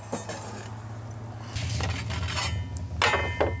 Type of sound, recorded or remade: recorded